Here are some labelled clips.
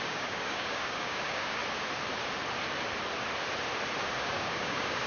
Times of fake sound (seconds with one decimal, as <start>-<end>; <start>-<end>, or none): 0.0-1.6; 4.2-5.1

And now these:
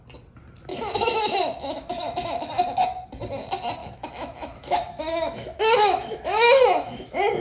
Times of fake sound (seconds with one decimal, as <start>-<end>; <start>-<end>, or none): 0.7-2.5; 3.8-7.4

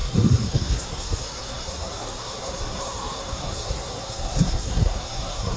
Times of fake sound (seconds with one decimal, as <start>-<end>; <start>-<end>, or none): 0.0-5.6

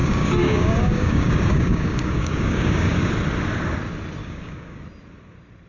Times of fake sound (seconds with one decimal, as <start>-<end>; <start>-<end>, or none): 0.0-3.1; 4.2-4.8